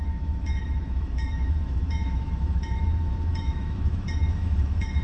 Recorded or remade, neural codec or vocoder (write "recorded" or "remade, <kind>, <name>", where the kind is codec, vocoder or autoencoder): remade, autoencoder, DAC-VAE